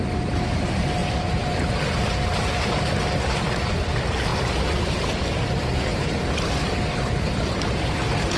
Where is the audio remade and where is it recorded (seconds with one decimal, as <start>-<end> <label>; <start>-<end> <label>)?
0.0-1.0 recorded; 1.0-1.8 remade; 1.8-5.7 recorded; 5.7-6.2 remade; 6.2-8.4 recorded